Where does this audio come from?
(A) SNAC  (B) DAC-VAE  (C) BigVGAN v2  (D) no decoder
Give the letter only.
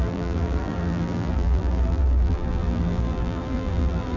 C